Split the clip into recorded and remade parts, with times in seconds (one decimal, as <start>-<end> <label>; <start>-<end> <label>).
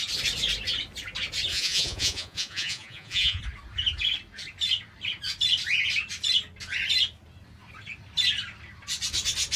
0.0-1.5 recorded; 1.5-3.4 remade; 3.4-9.6 recorded